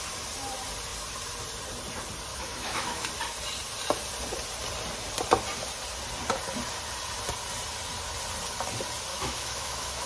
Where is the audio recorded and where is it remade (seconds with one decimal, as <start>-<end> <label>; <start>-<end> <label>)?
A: 0.0-2.3 recorded; 2.3-3.1 remade; 3.1-9.1 recorded; 9.1-10.1 remade